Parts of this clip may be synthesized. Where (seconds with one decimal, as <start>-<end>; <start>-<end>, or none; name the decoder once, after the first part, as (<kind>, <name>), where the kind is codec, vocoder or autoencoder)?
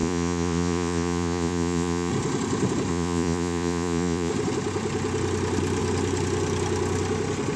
0.0-2.1 (vocoder, Vocos); 2.9-4.3